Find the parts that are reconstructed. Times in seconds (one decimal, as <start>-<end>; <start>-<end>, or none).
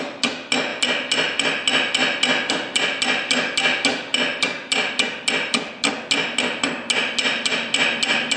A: none